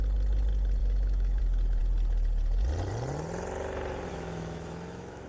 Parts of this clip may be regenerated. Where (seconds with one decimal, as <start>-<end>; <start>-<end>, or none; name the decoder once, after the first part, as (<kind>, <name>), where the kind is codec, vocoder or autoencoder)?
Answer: 0.8-1.4 (autoencoder, DAC-VAE); 4.1-5.3